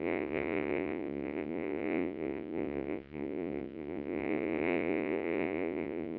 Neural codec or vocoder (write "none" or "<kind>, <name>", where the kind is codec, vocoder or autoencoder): vocoder, Vocos